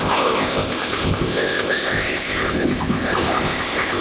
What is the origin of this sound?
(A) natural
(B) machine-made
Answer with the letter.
B